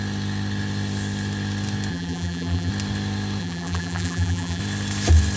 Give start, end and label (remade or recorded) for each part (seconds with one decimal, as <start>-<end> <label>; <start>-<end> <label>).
0.0-1.9 recorded; 1.9-2.7 remade; 2.7-3.4 recorded; 3.4-4.6 remade; 4.6-5.4 recorded

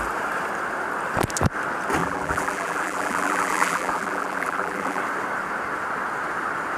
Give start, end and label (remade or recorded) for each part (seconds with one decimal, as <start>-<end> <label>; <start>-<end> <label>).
0.0-2.0 recorded; 2.0-5.0 remade; 5.0-6.8 recorded

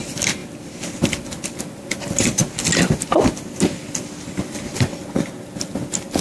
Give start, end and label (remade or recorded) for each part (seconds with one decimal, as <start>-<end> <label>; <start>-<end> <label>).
0.0-6.2 recorded

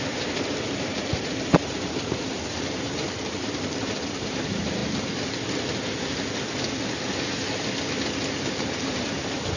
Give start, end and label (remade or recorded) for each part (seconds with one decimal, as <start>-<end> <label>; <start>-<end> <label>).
0.0-4.8 remade; 4.8-8.7 recorded; 8.7-9.6 remade

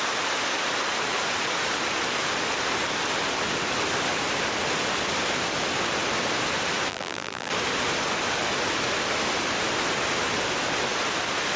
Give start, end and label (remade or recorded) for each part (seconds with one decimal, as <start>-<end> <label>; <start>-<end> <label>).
0.0-6.9 recorded; 6.9-7.5 remade; 7.5-11.6 recorded